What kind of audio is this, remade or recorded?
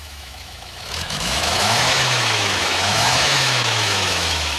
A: remade